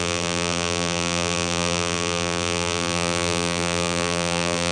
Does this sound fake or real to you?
fake